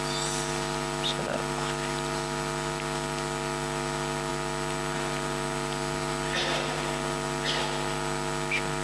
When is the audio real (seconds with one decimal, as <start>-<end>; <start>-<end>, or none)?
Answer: 0.0-8.8